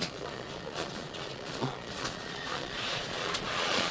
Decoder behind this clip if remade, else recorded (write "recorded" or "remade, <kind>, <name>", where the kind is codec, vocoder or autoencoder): remade, vocoder, Vocos